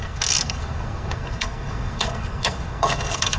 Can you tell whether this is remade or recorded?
remade